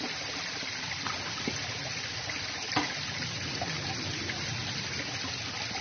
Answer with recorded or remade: remade